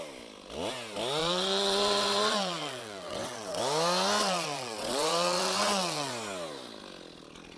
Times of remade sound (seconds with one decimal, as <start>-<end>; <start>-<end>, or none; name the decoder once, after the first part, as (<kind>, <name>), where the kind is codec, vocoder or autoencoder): 1.2-3.6 (vocoder, WaveNeXt); 4.2-6.1